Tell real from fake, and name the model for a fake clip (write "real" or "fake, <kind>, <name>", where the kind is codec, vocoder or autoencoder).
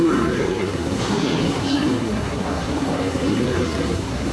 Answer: fake, codec, SNAC